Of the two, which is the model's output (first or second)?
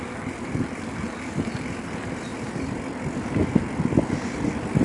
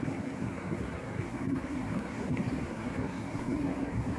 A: second